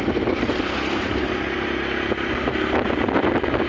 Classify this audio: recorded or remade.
recorded